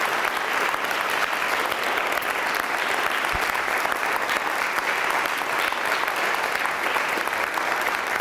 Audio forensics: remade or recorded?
recorded